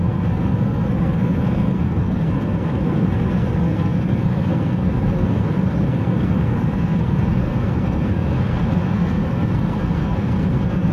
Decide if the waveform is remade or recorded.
remade